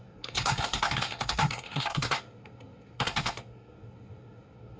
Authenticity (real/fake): fake